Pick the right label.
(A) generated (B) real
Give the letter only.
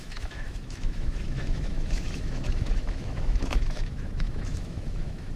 A